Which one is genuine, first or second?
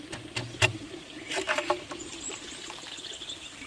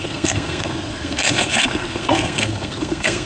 first